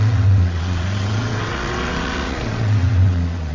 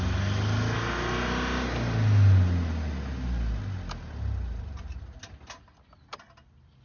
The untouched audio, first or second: second